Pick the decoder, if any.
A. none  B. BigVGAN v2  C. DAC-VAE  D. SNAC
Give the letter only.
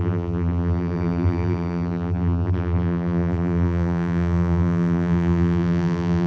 B